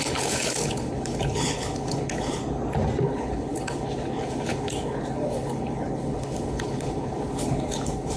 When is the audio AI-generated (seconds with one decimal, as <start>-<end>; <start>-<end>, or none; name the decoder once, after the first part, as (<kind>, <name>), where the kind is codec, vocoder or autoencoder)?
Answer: 0.0-2.4 (codec, HILCodec); 3.0-8.2